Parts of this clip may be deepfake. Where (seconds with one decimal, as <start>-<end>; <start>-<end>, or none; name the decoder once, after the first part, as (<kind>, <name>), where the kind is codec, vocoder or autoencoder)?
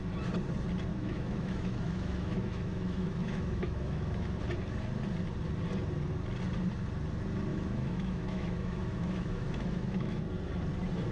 0.9-4.4 (autoencoder, DAC-VAE); 7.5-10.2